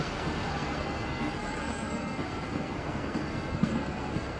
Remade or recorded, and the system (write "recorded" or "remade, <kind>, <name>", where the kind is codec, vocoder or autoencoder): remade, codec, SNAC